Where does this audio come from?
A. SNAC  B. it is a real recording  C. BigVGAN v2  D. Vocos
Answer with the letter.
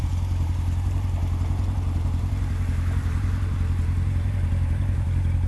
C